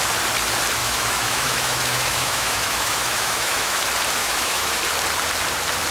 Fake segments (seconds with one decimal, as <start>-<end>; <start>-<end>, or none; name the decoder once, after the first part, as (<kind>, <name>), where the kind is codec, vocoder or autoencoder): 0.8-3.8 (autoencoder, DAC-VAE); 4.2-4.8